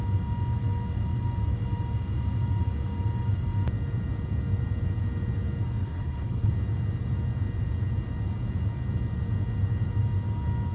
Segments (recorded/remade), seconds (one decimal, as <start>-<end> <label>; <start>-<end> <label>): 0.0-5.8 recorded; 5.8-6.5 remade; 6.5-10.7 recorded